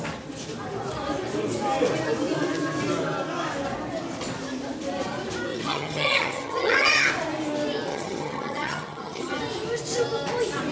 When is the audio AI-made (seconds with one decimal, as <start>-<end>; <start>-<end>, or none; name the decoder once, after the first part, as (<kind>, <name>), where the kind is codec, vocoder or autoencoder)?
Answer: 5.5-7.1 (vocoder, HiFi-GAN); 7.9-9.4